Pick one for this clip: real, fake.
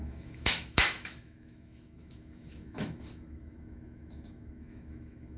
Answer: fake